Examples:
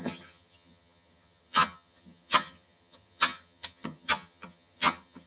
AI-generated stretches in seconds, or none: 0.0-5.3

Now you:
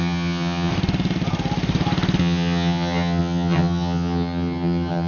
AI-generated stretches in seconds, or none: 0.0-0.7; 2.2-5.1

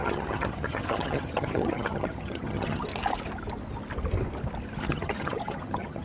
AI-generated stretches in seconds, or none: 0.0-2.9; 4.8-6.0

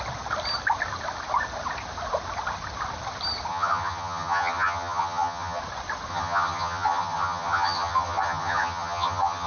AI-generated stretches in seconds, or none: 3.5-5.6; 6.1-9.5

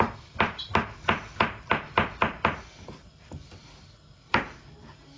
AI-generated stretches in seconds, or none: none

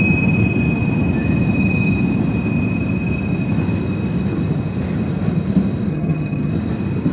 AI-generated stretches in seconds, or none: 5.9-6.5